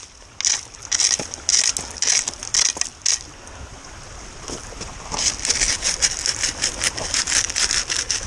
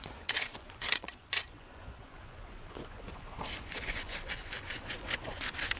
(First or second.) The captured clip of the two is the first